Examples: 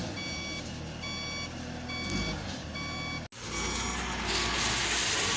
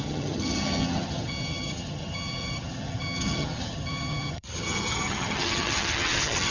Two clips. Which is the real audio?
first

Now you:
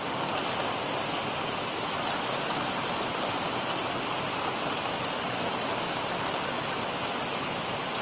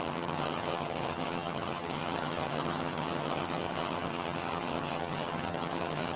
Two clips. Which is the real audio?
first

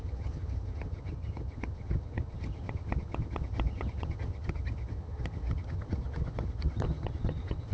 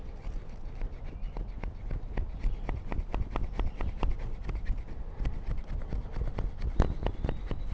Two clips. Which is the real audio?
second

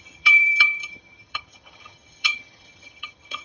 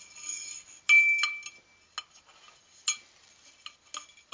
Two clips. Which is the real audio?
second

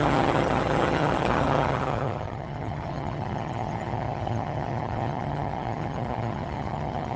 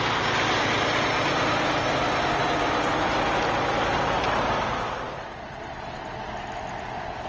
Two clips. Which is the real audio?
second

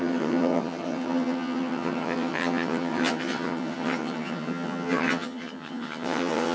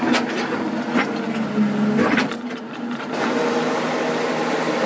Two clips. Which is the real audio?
second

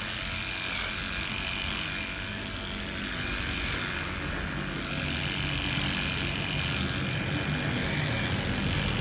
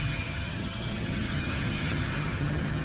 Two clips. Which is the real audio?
first